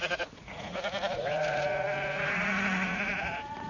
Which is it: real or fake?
fake